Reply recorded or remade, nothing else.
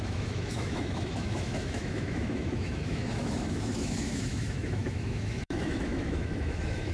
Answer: remade